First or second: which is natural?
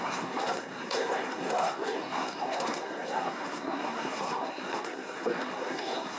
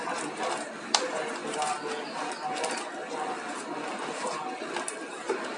second